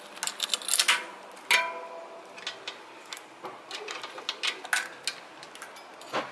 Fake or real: real